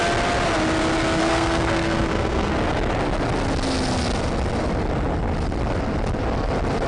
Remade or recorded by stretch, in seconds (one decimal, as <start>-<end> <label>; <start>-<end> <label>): 0.0-1.2 recorded; 1.2-2.5 remade; 2.5-6.9 recorded